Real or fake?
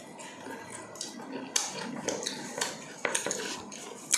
real